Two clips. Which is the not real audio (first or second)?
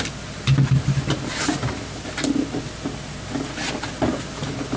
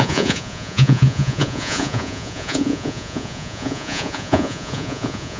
second